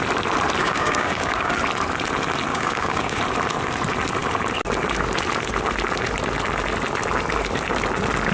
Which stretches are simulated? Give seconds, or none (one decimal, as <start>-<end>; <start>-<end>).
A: 0.6-1.5; 2.5-3.2